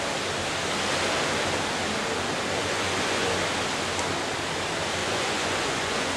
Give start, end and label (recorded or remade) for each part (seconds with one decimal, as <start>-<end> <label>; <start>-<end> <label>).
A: 0.0-2.6 recorded; 2.6-3.3 remade; 3.3-5.0 recorded; 5.0-6.2 remade